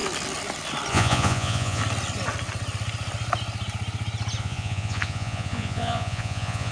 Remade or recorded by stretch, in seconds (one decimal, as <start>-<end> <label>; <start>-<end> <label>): 0.0-0.9 recorded; 0.9-1.8 remade; 1.8-4.4 recorded; 4.4-6.7 remade